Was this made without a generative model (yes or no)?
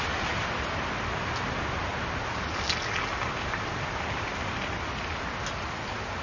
yes